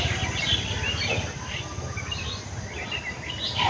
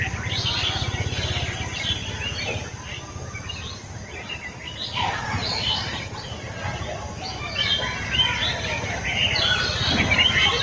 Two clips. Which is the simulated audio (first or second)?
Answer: first